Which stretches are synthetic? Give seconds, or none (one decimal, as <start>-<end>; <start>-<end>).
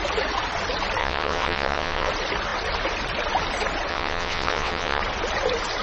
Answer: 1.0-2.1; 3.9-5.0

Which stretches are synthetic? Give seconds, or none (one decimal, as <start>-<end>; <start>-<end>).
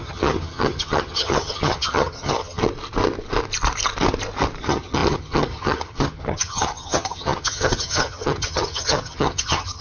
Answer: 0.0-2.6; 4.6-9.8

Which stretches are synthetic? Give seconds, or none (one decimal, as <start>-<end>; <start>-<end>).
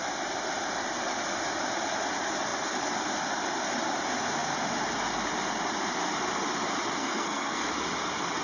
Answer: 7.0-7.7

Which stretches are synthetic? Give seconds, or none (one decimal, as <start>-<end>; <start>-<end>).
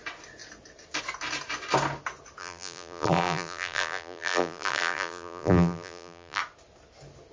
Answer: 2.4-6.4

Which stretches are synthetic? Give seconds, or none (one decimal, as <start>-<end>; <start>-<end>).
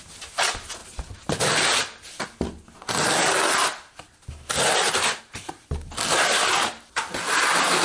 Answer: none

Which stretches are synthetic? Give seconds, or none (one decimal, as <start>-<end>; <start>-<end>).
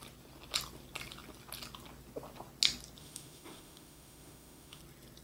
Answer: 3.0-4.8